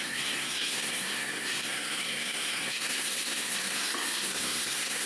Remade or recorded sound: remade